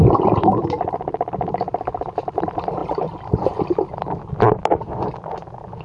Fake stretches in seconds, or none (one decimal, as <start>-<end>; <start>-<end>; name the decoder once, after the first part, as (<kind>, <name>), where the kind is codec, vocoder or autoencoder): none